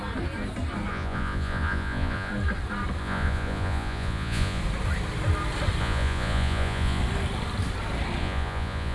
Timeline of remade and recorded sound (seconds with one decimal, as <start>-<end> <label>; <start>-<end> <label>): 0.0-0.9 recorded; 0.9-2.3 remade; 2.3-3.0 recorded; 3.0-4.6 remade; 4.6-5.8 recorded; 5.8-7.0 remade; 7.0-8.2 recorded; 8.2-8.9 remade